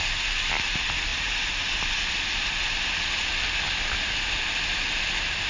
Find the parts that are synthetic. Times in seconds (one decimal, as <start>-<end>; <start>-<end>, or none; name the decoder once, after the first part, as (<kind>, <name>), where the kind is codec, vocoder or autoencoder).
none